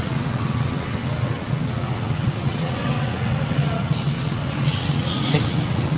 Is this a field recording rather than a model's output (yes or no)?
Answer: no